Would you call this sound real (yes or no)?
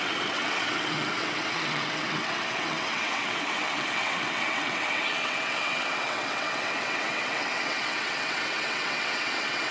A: no